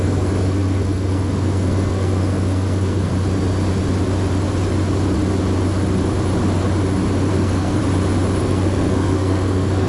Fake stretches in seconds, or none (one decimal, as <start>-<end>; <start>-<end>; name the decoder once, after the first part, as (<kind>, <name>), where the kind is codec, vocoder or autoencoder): 0.0-3.1 (codec, SNAC); 7.3-7.8; 8.4-9.9